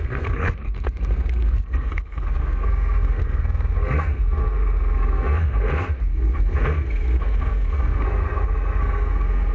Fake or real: fake